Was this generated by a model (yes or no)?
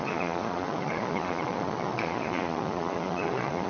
yes